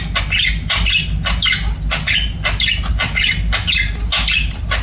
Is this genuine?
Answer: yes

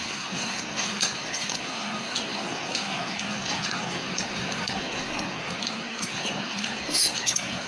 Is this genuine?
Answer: no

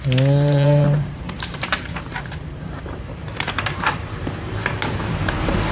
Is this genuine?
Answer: no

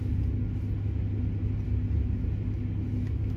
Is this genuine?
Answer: yes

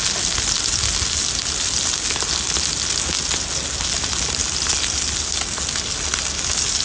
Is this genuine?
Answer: yes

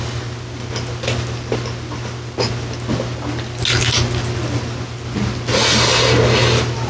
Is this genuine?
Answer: yes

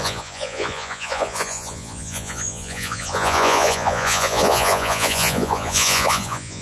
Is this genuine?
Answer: no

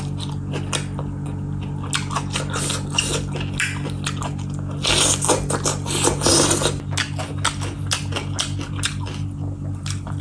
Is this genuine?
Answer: yes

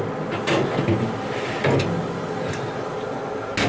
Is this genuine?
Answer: yes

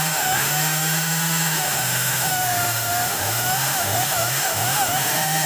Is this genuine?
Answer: no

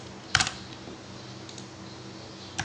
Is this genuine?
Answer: yes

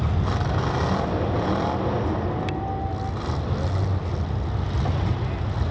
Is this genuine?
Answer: yes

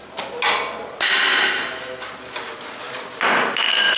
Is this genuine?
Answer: yes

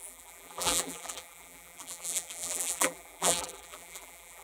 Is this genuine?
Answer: no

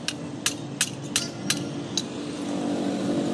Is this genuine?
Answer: yes